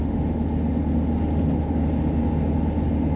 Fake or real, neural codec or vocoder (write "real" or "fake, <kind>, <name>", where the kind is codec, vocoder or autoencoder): real